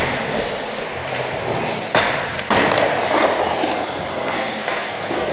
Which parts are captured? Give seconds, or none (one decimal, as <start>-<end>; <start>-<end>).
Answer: 0.0-4.1